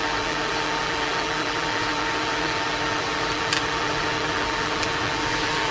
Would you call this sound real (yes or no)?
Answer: no